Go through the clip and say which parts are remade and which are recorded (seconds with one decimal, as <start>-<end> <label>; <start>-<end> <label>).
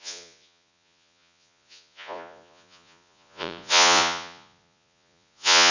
0.0-5.7 remade